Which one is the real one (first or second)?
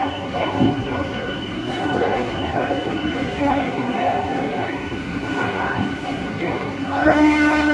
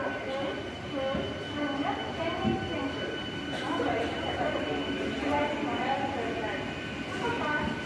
second